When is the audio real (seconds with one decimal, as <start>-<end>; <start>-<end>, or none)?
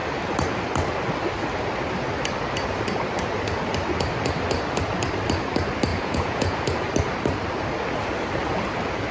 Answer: 0.0-5.9; 6.6-9.1